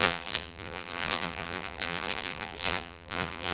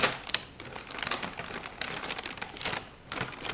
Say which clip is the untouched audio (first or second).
second